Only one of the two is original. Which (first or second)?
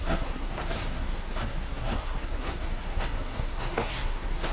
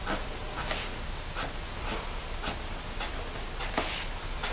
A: second